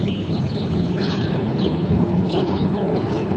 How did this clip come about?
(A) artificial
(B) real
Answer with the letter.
A